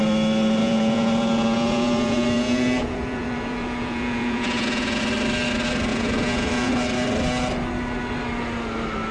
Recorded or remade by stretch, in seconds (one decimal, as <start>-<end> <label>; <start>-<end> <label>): 0.0-0.6 recorded; 0.6-5.0 remade; 5.0-5.9 recorded; 5.9-6.7 remade; 6.7-9.1 recorded